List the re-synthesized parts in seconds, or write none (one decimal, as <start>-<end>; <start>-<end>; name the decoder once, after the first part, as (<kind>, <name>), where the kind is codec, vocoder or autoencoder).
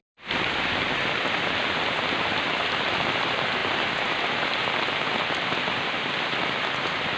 none